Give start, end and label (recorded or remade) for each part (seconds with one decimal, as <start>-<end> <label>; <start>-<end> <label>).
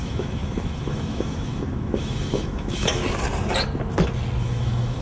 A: 0.0-3.0 remade; 3.0-4.4 recorded; 4.4-5.0 remade